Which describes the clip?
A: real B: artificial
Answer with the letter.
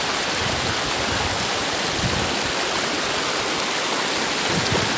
A